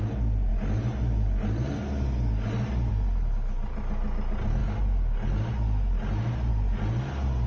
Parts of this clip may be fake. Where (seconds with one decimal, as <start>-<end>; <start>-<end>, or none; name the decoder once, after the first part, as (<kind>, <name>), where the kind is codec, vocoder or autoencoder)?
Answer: none